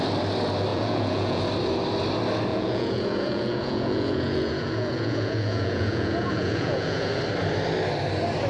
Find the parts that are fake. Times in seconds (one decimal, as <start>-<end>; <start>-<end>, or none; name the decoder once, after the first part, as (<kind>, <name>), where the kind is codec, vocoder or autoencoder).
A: 0.7-1.4 (vocoder, Vocos); 2.5-7.2